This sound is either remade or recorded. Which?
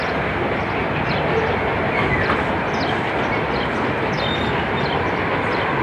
recorded